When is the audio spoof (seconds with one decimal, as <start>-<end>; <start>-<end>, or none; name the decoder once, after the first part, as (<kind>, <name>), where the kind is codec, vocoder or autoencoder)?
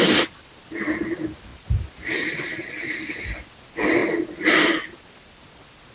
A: none